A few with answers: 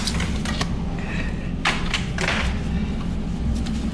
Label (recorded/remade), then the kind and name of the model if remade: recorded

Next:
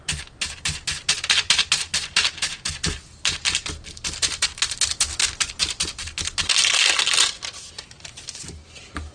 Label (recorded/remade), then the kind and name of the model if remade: recorded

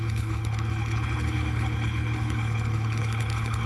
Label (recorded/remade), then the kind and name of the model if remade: remade, codec, HILCodec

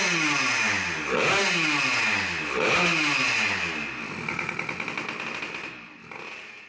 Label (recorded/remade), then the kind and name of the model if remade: recorded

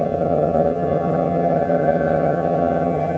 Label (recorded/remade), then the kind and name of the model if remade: remade, vocoder, HiFi-GAN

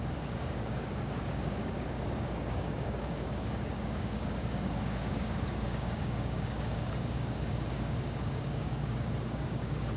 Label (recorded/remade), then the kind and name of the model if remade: remade, codec, DAC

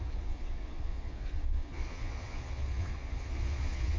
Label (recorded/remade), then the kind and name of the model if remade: remade, vocoder, Vocos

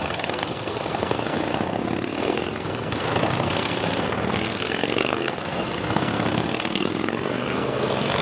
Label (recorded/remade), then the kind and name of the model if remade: remade, codec, SNAC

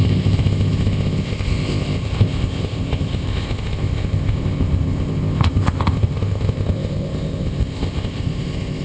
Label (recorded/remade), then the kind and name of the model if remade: remade, codec, ZipCodec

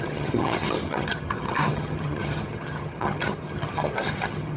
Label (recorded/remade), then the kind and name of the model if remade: remade, vocoder, HiFi-GAN